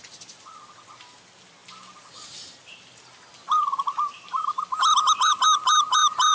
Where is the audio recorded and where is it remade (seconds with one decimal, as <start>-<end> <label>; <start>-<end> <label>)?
0.0-6.3 recorded